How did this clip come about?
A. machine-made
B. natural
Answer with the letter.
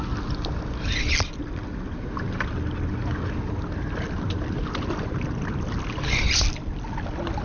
B